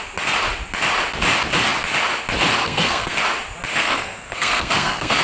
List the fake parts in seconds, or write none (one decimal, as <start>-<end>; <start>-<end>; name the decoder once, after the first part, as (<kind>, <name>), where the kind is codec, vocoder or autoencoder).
2.6-3.2 (codec, SNAC); 3.7-5.2